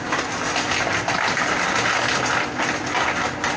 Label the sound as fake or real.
real